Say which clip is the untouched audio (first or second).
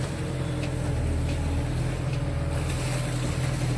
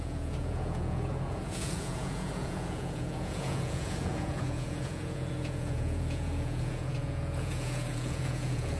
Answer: first